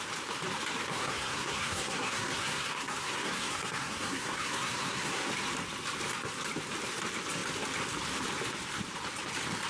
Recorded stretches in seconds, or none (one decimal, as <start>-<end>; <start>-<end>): 0.0-0.9; 5.3-9.7